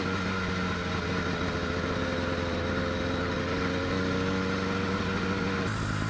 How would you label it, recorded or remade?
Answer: recorded